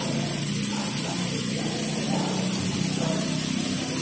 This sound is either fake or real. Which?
real